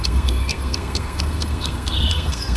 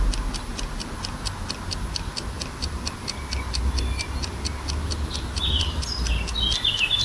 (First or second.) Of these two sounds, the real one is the second